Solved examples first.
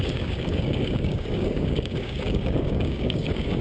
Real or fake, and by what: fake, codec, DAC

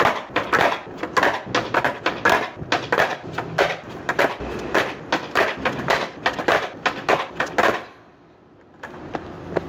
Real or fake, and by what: real